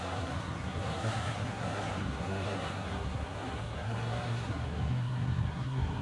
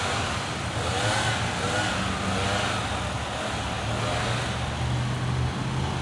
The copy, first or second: first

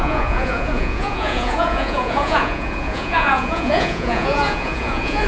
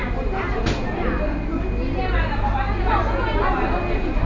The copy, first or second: first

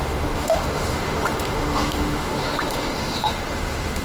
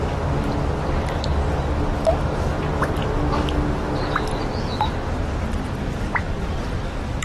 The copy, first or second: first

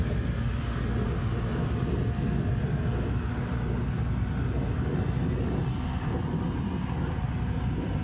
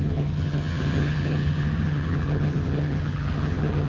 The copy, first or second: second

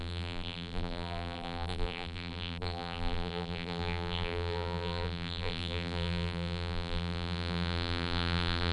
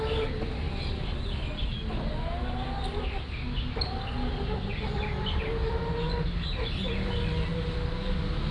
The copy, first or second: first